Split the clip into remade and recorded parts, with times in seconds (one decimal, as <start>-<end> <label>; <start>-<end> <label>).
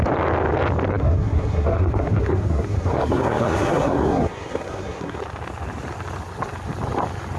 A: 0.0-0.9 recorded; 0.9-5.2 remade; 5.2-7.4 recorded